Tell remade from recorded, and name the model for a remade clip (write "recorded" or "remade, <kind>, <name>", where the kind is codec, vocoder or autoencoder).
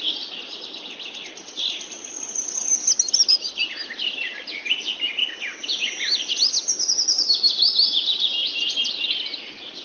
recorded